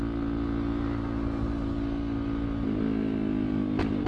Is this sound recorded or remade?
recorded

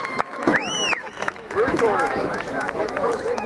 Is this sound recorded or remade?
remade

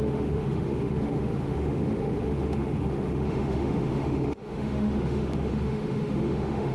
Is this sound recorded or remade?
remade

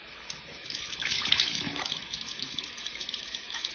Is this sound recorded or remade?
remade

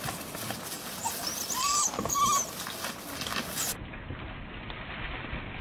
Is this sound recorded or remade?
recorded